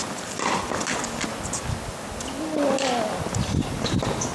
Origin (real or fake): real